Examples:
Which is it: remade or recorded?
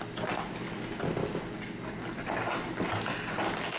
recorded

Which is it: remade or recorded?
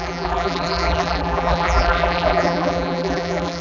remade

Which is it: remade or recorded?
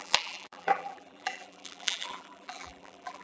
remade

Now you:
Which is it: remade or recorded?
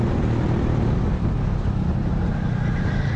recorded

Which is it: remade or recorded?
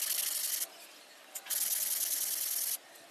recorded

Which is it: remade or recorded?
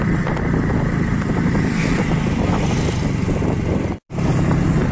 remade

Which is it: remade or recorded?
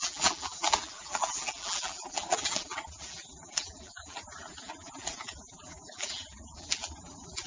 remade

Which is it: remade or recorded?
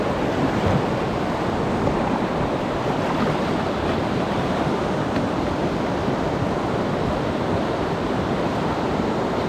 remade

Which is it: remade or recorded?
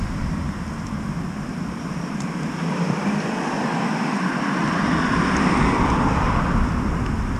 remade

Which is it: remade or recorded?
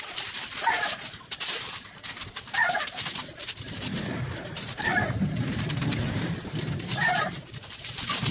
remade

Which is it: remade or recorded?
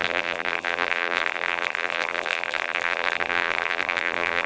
remade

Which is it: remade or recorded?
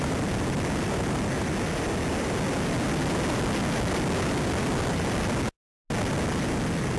recorded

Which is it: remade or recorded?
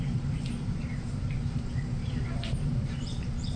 remade